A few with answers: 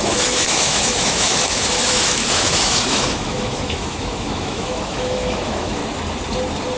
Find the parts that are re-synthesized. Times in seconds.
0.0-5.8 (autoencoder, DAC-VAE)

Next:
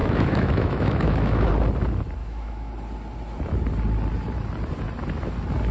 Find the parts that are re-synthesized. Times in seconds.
0.0-1.5 (autoencoder, DAC-VAE); 2.2-2.7

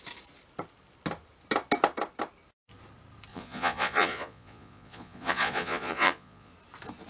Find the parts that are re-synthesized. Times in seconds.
3.3-6.5 (vocoder, Vocos)

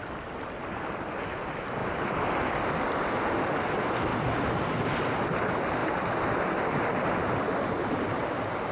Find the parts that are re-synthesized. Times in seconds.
1.8-2.4 (vocoder, BigVGAN v2); 4.1-4.9; 5.8-6.3

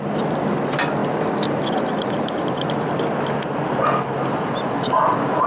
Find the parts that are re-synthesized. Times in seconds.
none